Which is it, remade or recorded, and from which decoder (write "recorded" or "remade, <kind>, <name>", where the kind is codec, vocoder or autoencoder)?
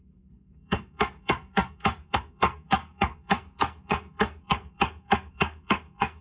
remade, codec, SNAC